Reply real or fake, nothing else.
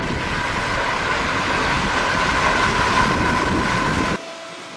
real